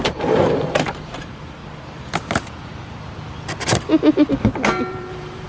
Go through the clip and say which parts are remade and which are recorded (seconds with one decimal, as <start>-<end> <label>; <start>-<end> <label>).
0.0-1.6 remade; 1.6-4.9 recorded; 4.9-5.5 remade